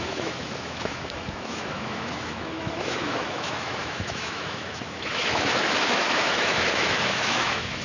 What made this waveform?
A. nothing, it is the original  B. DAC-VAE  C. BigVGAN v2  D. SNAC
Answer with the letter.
B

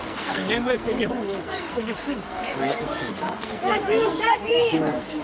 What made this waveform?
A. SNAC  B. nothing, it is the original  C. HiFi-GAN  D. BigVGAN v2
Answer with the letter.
A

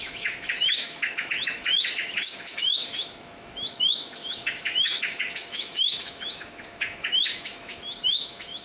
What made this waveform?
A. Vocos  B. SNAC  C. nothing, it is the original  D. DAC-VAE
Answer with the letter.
D